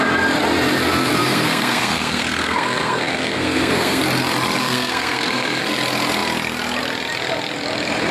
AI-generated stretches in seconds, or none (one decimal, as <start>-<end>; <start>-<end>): 1.2-4.0; 4.6-5.6